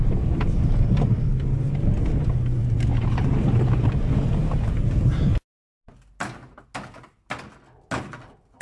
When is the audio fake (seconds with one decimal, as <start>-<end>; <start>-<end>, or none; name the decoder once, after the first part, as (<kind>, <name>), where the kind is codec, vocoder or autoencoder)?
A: 2.6-4.0 (vocoder, BigVGAN v2); 4.4-5.4